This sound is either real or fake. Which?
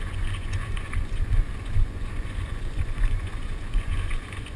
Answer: fake